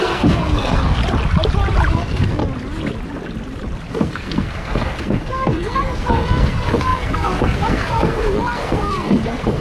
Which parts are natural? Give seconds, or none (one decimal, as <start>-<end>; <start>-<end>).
1.0-1.9; 2.4-3.9